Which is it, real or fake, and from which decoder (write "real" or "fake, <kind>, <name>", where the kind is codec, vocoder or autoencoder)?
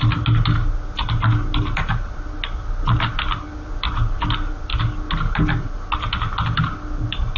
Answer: real